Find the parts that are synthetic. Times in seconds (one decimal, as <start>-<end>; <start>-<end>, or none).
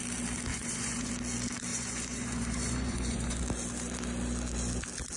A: 0.5-1.1; 1.7-3.4